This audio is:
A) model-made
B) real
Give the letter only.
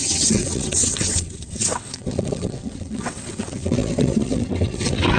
A